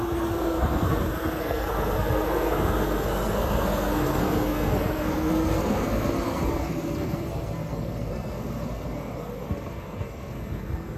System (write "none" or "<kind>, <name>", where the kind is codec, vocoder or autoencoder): codec, SNAC